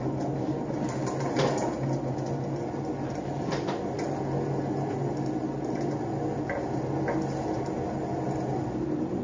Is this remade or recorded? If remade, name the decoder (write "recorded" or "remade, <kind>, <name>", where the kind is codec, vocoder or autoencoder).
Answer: recorded